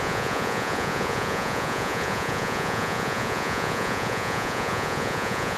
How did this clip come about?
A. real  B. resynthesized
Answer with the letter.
B